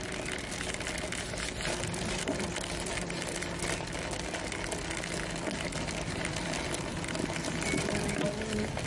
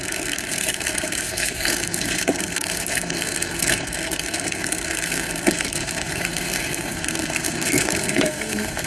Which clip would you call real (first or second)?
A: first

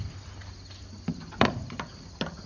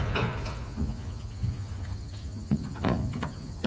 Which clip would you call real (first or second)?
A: first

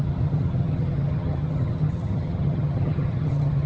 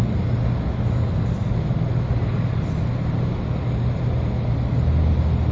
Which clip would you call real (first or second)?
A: second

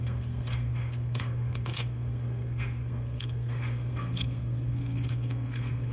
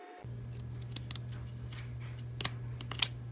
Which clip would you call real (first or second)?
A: second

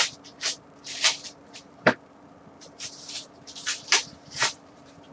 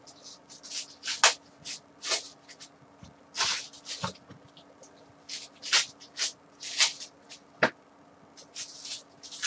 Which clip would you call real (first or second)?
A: second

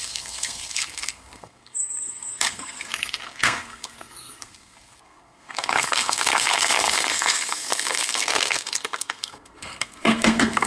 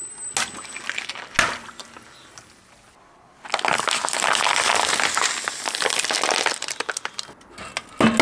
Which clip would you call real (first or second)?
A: second